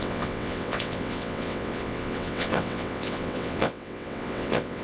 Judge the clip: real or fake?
fake